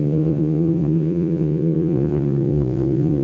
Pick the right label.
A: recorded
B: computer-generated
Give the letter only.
B